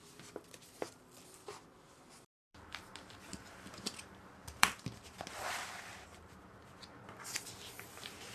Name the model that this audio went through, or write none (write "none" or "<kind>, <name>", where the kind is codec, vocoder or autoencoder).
vocoder, BigVGAN v2